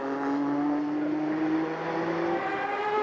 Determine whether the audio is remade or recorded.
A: recorded